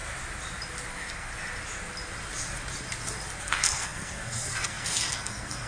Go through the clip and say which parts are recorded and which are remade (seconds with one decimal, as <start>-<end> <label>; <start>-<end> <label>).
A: 0.0-0.9 recorded; 0.9-1.3 remade; 1.3-3.4 recorded; 3.4-5.7 remade